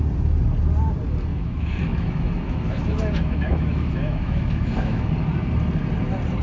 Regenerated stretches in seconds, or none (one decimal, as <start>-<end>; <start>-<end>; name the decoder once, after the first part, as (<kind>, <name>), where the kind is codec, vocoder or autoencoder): 1.3-5.1 (autoencoder, DAC-VAE)

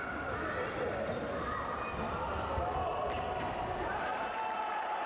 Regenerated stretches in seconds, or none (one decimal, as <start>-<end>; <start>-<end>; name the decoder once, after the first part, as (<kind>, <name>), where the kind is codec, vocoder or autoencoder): none

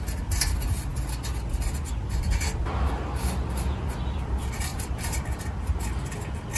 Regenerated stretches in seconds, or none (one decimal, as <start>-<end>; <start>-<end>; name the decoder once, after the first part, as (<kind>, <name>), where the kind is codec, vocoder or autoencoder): 4.7-5.4 (vocoder, BigVGAN v2)

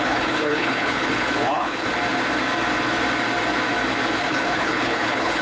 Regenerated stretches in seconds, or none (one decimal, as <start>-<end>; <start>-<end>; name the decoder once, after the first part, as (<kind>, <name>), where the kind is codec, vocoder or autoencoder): 0.0-1.9 (codec, HILCodec); 4.2-5.4